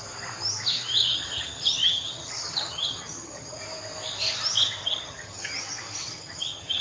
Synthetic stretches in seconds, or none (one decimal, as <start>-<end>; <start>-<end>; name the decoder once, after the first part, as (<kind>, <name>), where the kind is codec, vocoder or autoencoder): 1.0-3.6 (vocoder, HiFi-GAN); 4.8-5.6; 6.0-6.8